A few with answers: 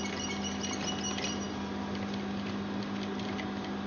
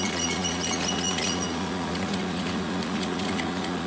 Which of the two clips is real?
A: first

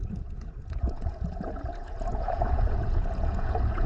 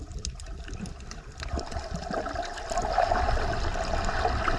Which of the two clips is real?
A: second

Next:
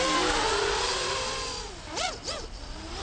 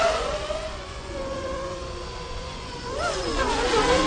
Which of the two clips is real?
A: first